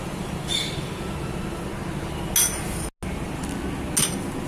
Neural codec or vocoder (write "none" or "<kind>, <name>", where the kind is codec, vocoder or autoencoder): none